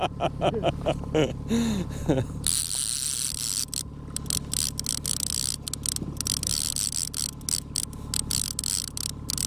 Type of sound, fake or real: real